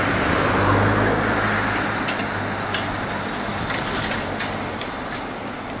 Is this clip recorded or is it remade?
recorded